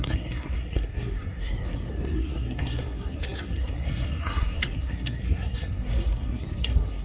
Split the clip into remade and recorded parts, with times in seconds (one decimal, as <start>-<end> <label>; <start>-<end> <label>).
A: 0.0-7.0 remade